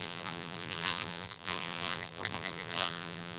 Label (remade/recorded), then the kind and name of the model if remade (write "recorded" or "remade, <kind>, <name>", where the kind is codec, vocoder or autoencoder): remade, vocoder, BigVGAN v2